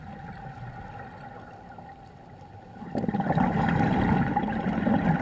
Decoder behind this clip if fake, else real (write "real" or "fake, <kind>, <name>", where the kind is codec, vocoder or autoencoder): real